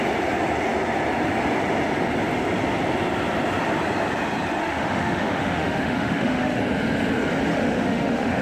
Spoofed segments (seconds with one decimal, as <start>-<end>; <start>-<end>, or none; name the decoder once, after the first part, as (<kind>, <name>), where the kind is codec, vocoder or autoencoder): 4.6-6.6 (autoencoder, DAC-VAE); 7.5-8.4